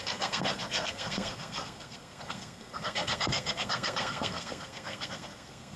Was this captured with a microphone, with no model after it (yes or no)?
no